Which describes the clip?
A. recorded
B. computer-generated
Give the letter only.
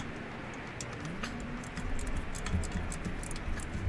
A